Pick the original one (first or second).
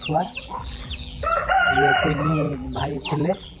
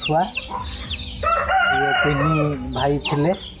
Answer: second